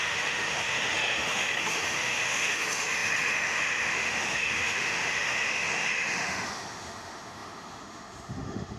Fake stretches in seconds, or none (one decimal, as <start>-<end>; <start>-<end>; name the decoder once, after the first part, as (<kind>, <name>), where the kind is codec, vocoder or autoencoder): 0.0-8.8 (autoencoder, DAC-VAE)